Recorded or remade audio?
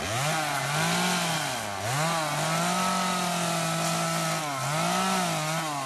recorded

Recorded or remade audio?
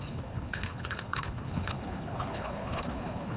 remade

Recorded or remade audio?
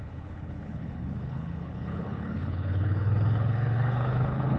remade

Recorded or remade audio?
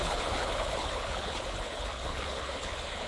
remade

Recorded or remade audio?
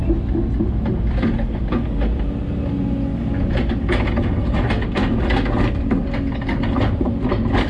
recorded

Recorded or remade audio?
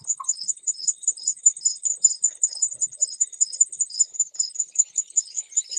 remade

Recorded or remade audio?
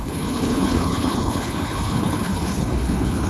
remade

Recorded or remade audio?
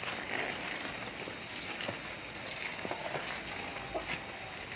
recorded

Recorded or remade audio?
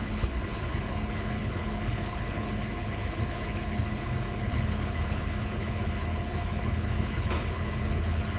remade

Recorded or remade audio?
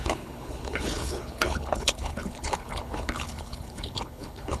remade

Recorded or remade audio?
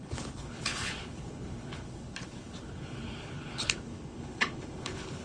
remade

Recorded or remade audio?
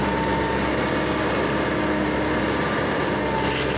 recorded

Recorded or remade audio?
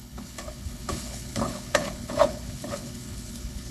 remade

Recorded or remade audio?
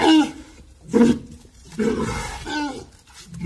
recorded